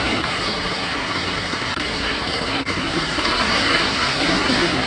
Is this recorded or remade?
remade